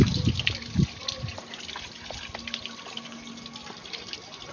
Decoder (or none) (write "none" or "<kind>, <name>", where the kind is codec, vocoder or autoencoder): none